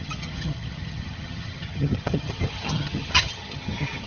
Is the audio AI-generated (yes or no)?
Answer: yes